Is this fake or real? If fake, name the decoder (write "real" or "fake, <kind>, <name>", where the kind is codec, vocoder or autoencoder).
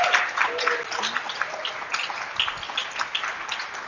real